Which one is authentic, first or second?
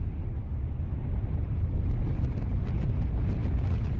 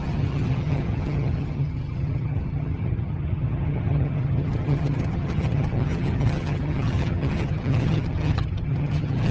first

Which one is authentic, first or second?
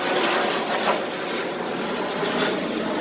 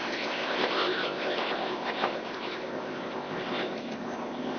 first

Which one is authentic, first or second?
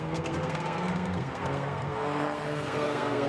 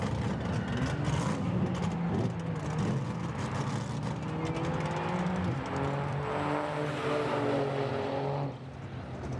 second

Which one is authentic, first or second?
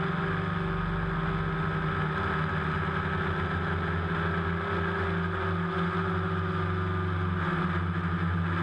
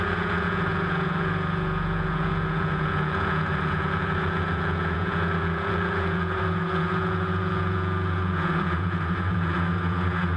first